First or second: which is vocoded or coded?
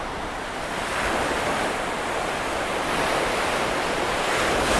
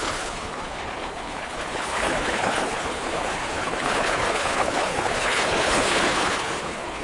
second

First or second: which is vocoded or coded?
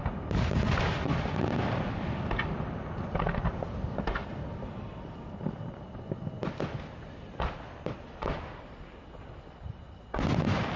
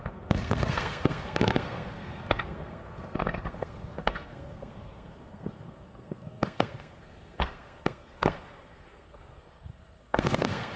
second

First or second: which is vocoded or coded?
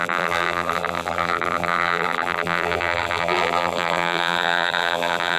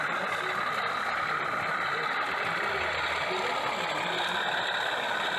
first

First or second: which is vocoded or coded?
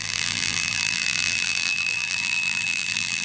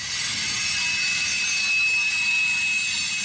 first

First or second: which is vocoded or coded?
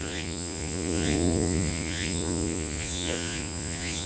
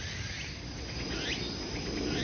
first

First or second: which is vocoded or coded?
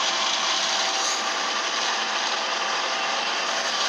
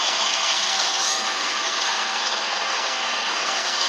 second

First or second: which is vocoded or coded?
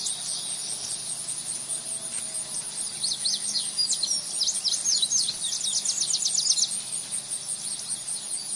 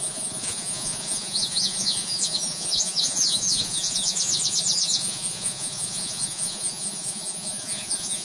second